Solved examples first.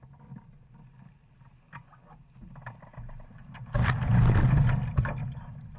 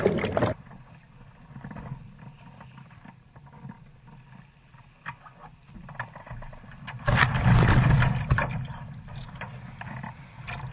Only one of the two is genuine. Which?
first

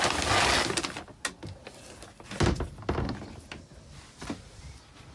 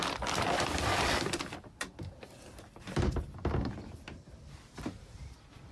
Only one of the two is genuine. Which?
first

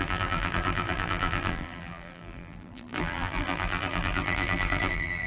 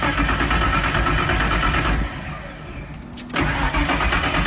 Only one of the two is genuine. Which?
second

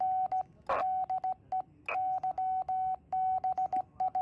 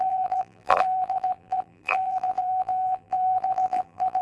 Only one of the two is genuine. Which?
first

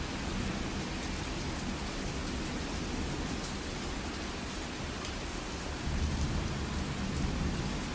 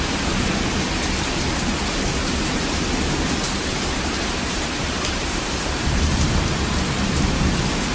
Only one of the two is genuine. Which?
first